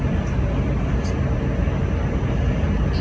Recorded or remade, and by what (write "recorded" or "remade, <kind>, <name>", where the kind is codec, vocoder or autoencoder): recorded